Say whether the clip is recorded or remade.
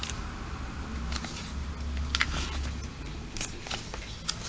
recorded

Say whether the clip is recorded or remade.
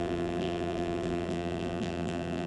remade